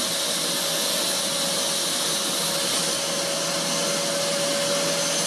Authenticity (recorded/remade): recorded